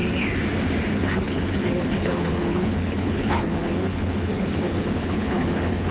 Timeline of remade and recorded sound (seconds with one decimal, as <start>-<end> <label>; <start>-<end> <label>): 0.0-1.0 recorded; 1.0-5.9 remade